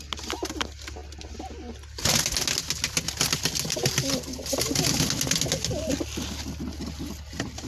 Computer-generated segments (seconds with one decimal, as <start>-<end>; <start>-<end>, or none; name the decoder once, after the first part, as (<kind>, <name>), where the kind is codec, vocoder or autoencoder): none